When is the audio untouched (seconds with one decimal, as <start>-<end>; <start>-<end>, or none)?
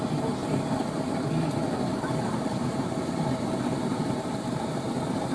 0.0-1.9